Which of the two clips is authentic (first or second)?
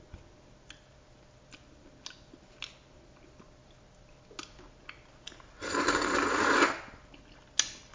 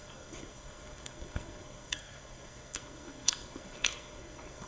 first